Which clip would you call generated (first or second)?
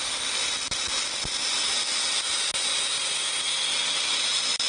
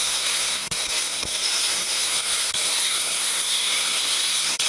second